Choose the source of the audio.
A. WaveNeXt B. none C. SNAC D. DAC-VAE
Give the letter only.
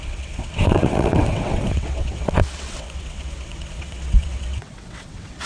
A